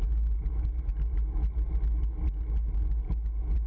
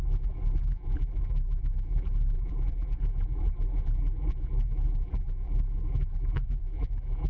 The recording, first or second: first